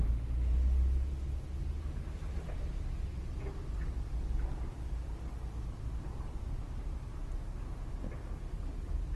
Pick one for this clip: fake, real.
real